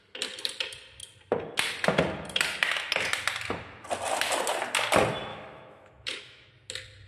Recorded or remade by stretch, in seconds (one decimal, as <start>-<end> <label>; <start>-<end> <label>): 0.0-5.3 recorded; 5.3-6.5 remade; 6.5-7.1 recorded

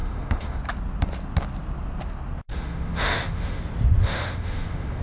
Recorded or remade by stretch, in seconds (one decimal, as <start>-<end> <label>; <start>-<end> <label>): 0.0-0.6 remade; 0.6-2.5 recorded; 2.5-3.6 remade; 3.6-4.0 recorded; 4.0-5.0 remade

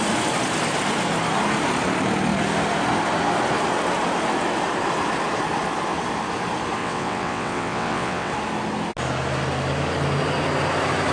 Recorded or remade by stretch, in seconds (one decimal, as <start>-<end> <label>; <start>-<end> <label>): 0.0-6.8 recorded; 6.8-8.3 remade; 8.3-11.1 recorded

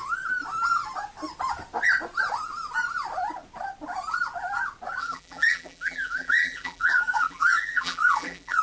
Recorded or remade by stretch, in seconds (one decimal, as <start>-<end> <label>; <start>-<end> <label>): 0.0-5.0 recorded; 5.0-8.6 remade

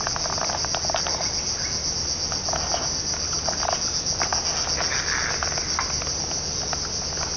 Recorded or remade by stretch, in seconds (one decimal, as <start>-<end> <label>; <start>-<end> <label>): 0.0-7.4 recorded

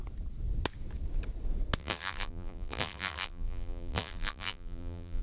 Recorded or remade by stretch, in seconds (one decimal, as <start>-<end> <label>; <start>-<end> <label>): 0.0-1.8 recorded; 1.8-5.2 remade

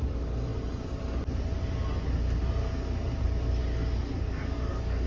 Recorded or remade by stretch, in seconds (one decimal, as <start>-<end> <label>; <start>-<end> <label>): 0.0-4.1 recorded; 4.1-5.1 remade

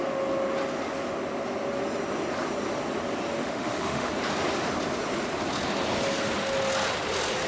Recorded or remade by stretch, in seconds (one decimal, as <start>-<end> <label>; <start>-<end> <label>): 0.0-3.4 recorded; 3.4-4.1 remade; 4.1-7.5 recorded